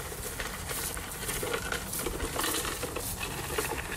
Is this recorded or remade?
recorded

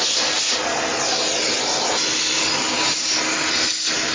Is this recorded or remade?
recorded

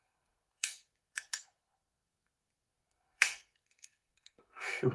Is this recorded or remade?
remade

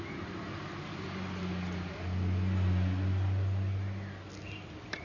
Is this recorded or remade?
recorded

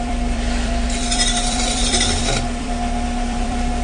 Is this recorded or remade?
remade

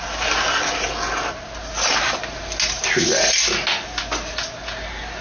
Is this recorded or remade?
recorded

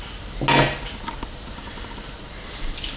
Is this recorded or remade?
recorded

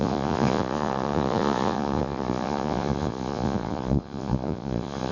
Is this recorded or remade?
remade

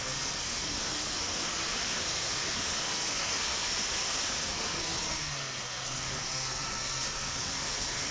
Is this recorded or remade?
remade